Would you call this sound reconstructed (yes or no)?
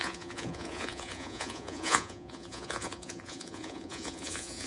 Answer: yes